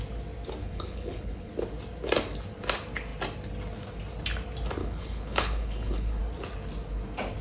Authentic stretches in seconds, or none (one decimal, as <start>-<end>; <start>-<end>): 0.0-0.6; 1.5-4.8; 6.2-7.4